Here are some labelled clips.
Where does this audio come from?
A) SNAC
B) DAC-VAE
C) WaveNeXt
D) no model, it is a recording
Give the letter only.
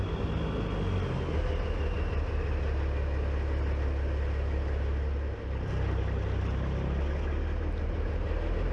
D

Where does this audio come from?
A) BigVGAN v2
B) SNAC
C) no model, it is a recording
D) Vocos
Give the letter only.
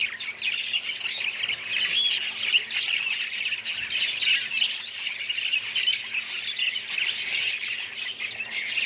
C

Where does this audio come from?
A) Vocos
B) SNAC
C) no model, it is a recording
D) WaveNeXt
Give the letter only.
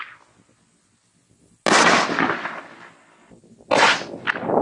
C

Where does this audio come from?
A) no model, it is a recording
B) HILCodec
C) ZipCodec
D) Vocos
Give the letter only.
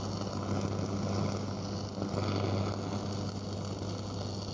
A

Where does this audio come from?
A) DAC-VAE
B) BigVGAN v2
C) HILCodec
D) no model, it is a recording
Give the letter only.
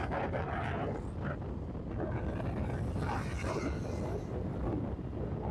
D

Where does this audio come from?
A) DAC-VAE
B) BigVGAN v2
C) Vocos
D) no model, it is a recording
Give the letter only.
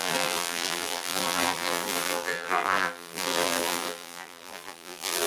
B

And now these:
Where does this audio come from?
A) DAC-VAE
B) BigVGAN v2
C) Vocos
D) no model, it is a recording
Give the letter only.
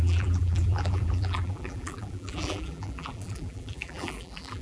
B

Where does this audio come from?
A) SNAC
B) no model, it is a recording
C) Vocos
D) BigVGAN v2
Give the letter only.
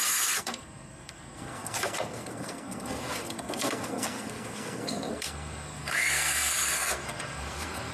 A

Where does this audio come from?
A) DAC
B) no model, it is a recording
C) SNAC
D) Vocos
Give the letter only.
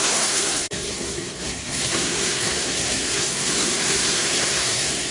C